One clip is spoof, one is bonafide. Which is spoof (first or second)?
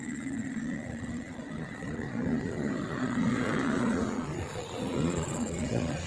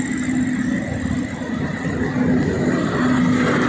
first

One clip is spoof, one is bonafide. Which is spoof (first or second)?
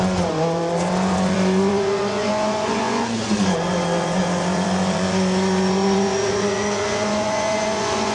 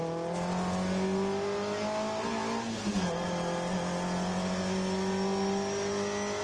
first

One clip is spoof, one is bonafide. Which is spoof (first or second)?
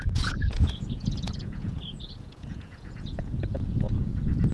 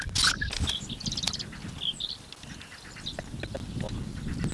first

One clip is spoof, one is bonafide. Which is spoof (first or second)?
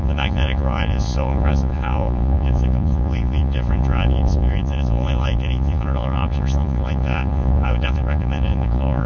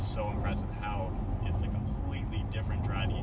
first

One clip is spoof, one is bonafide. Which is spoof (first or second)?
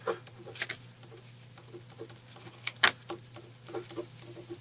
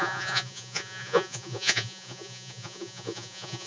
second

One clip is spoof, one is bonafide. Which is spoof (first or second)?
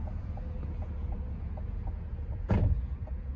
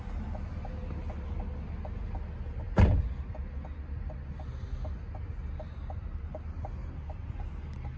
first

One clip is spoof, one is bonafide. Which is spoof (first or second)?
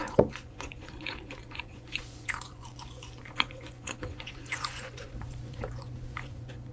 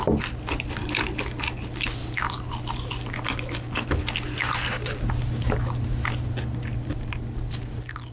first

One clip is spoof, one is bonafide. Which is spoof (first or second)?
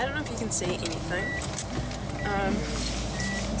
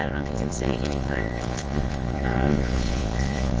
second